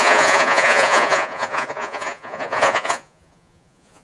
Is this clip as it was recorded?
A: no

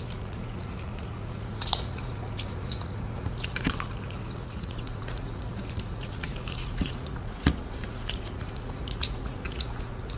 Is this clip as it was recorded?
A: no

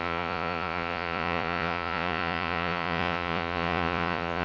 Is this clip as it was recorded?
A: no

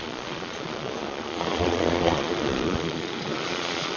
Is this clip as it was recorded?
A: no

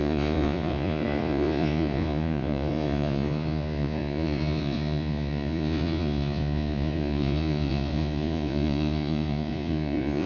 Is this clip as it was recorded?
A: no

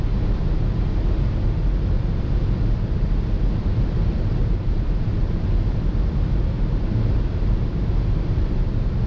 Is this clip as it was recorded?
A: yes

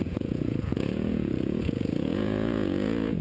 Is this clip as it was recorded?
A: no